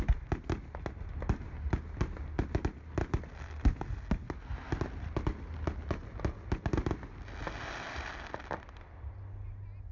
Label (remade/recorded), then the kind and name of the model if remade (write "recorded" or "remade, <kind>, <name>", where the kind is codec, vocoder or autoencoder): recorded